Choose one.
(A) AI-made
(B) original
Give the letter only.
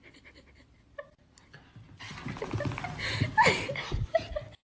B